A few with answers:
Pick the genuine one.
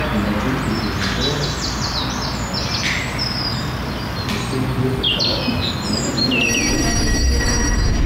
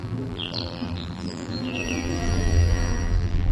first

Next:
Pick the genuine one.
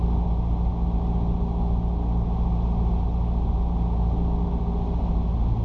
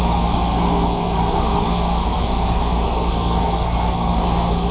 first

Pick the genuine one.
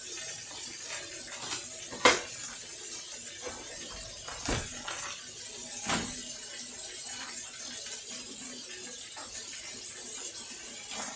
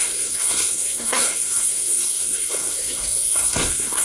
first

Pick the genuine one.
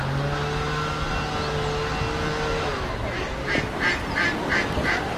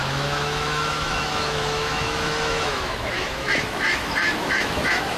first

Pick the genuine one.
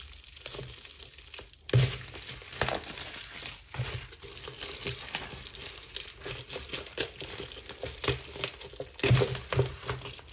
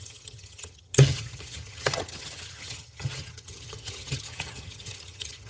first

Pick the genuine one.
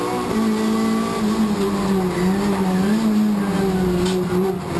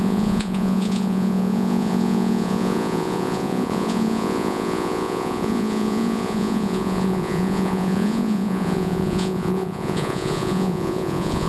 first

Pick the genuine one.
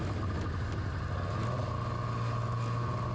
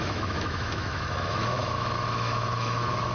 first